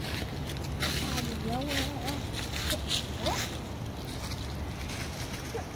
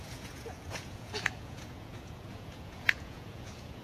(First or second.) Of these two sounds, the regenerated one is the second